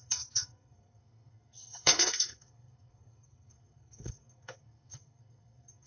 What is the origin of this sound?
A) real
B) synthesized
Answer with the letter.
B